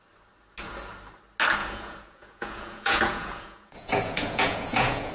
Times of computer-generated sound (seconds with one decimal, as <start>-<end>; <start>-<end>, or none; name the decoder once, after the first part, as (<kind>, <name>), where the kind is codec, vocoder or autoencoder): 1.6-5.1 (vocoder, Vocos)